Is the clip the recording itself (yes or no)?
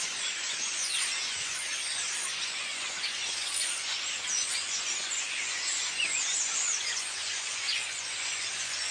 no